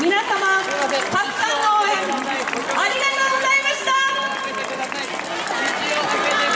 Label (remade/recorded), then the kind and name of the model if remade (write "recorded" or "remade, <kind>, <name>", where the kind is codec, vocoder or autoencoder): recorded